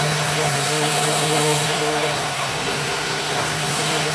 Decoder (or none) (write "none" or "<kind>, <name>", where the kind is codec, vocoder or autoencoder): codec, SNAC